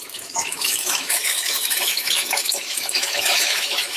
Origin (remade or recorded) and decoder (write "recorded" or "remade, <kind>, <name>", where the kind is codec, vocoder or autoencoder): remade, autoencoder, DAC-VAE